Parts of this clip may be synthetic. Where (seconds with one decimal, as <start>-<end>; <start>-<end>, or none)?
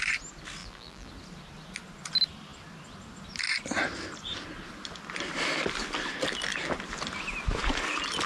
0.6-1.1